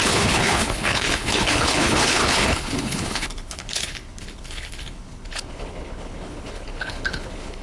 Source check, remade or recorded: remade